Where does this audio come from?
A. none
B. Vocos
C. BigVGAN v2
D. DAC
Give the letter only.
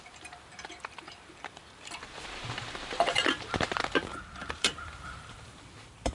C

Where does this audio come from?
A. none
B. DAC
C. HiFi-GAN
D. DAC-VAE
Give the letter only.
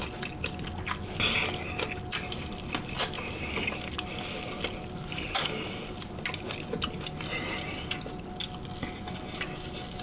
A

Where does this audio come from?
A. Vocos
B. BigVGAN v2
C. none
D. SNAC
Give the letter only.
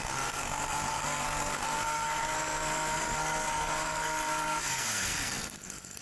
D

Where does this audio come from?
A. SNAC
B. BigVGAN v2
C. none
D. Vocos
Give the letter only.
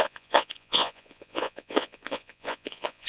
D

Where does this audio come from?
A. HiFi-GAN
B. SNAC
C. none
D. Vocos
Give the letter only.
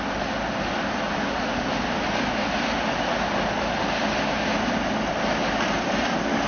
C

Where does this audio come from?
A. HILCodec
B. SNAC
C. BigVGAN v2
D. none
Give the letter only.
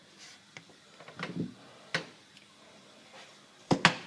D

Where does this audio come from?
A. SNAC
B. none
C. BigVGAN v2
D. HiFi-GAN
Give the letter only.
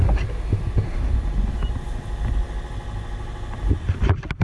B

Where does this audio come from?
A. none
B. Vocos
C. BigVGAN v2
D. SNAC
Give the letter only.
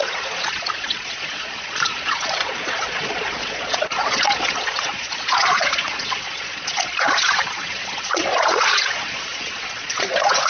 B